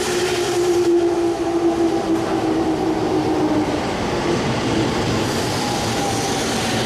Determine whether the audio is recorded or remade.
recorded